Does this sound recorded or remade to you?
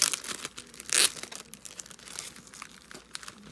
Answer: recorded